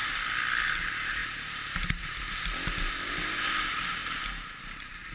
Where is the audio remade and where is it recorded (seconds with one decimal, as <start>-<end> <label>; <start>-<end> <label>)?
0.0-0.6 recorded; 0.6-5.1 remade